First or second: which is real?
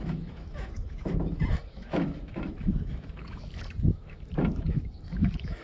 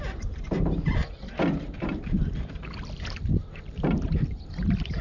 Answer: second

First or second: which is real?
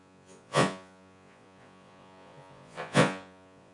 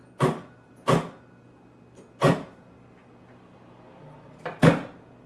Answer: second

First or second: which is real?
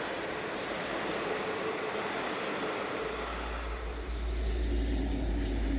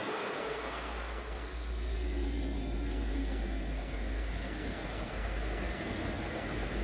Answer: first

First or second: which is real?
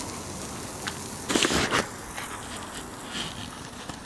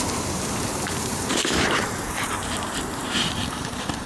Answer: first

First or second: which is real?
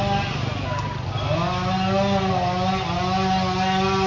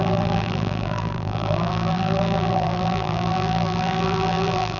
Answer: first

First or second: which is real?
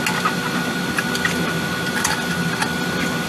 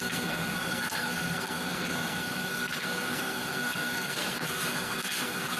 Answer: first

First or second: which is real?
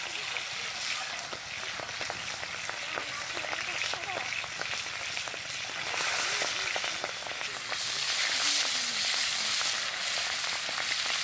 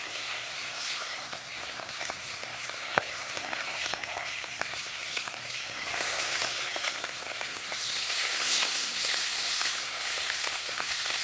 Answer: first